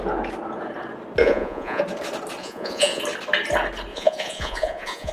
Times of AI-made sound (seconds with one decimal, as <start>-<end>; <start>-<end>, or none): 1.2-1.8; 2.4-3.0; 3.9-5.1